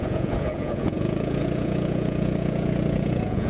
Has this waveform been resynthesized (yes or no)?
yes